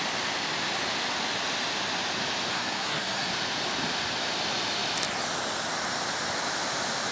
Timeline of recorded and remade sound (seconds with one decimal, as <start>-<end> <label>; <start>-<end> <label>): 0.0-2.5 recorded; 2.5-3.3 remade; 3.3-7.1 recorded